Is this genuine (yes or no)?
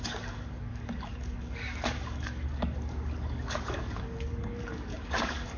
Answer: no